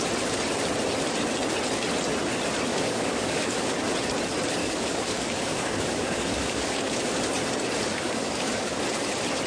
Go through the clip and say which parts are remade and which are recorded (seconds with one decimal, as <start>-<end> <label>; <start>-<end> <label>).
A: 0.0-2.7 recorded; 2.7-3.8 remade; 3.8-4.6 recorded; 4.6-7.0 remade; 7.0-7.9 recorded; 7.9-8.8 remade; 8.8-9.5 recorded